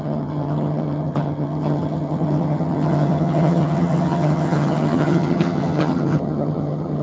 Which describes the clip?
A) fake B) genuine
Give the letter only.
A